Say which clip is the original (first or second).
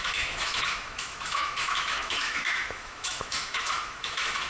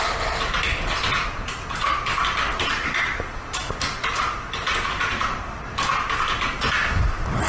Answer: second